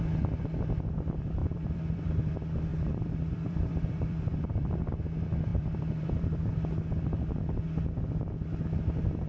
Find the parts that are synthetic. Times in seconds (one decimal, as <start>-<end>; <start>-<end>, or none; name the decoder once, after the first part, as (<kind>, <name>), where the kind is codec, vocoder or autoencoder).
1.4-2.3 (vocoder, BigVGAN v2); 2.7-4.7; 5.5-6.5